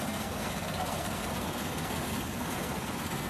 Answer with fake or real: fake